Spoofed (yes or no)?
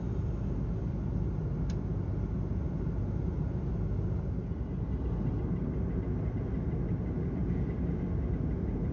no